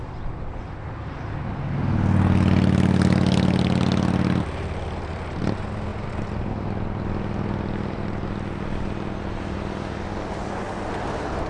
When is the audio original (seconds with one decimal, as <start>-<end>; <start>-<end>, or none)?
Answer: 0.0-5.9; 8.3-11.5